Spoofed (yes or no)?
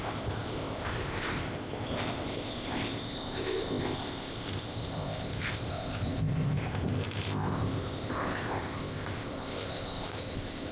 yes